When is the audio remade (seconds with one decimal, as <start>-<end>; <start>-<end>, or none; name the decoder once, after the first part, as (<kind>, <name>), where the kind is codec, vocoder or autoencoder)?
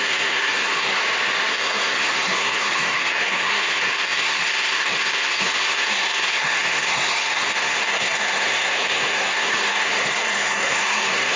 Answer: 0.0-1.0 (codec, SNAC); 1.5-11.4